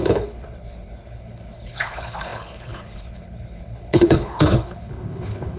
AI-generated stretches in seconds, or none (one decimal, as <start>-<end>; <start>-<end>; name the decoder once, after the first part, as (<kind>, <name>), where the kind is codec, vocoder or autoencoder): 0.0-5.6 (codec, HILCodec)